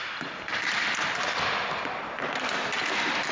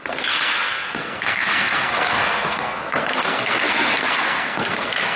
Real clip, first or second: first